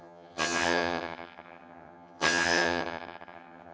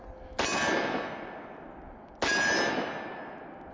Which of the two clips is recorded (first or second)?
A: second